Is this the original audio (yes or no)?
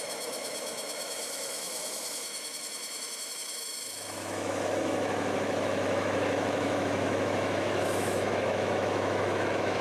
no